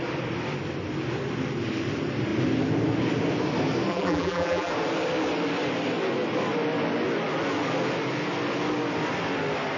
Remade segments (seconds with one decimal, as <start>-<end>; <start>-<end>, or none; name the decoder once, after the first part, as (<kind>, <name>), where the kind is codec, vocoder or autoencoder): 3.9-4.7 (vocoder, BigVGAN v2)